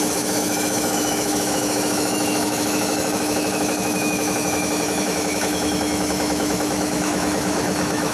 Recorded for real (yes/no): no